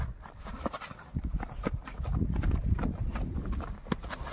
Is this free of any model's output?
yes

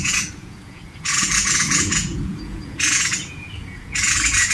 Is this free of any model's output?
no